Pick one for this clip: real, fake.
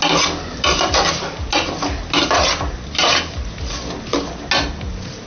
real